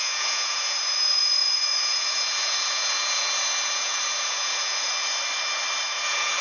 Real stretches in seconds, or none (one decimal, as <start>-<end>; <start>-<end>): 4.9-5.9